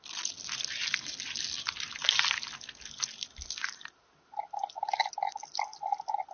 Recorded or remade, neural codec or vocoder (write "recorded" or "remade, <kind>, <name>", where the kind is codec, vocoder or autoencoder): recorded